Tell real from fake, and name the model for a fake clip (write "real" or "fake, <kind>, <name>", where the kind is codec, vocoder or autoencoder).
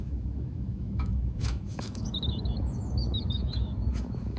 fake, autoencoder, DAC-VAE